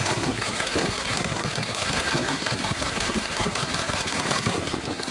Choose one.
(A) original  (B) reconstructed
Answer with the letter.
B